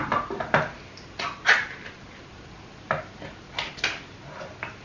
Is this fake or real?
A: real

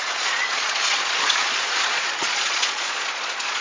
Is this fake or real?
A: fake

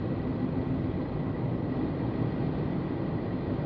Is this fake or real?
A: real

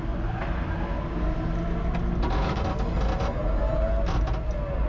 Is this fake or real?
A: real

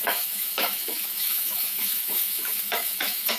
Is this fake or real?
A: fake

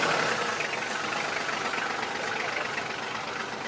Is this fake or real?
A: real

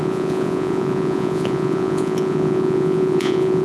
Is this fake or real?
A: fake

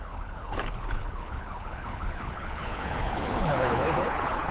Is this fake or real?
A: fake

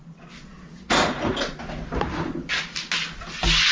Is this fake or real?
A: real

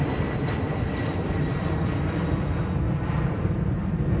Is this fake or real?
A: fake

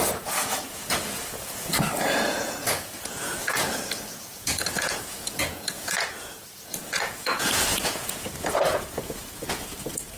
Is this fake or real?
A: fake